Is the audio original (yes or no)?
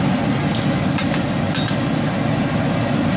yes